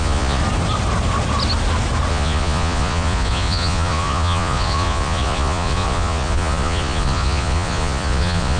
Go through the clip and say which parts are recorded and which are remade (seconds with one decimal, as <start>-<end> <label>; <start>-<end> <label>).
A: 0.0-0.4 remade; 0.4-2.1 recorded; 2.1-8.6 remade